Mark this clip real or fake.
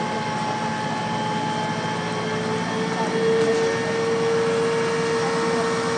real